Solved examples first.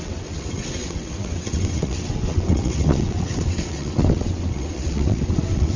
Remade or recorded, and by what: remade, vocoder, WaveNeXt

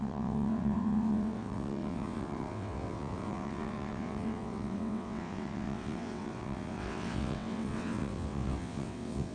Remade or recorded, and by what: remade, vocoder, WaveNeXt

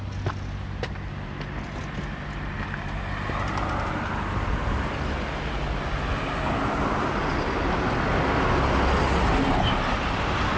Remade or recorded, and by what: recorded